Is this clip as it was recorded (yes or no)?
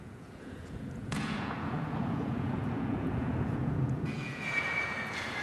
no